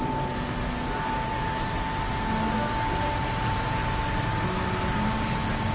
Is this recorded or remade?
recorded